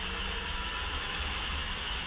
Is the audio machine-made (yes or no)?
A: yes